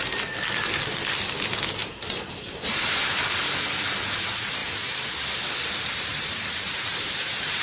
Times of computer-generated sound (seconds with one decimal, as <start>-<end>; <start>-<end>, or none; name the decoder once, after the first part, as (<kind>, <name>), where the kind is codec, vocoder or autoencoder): 1.8-3.2 (vocoder, BigVGAN v2); 6.1-7.6